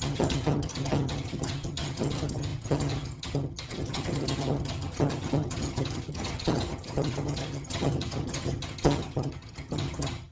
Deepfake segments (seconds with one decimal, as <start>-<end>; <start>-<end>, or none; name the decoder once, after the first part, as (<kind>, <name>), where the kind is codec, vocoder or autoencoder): 0.0-10.3 (vocoder, HiFi-GAN)